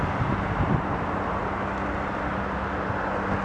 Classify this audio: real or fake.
real